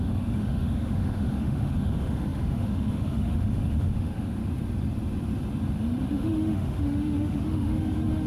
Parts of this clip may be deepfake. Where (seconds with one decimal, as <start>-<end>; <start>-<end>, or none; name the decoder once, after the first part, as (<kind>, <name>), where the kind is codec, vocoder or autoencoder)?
0.0-4.4 (autoencoder, DAC-VAE); 6.1-8.3